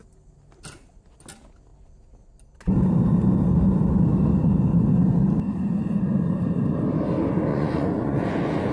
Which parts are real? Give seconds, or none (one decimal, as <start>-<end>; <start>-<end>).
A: 0.0-7.5